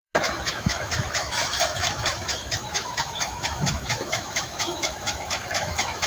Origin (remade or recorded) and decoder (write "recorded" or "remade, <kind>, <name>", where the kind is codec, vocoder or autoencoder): remade, autoencoder, DAC-VAE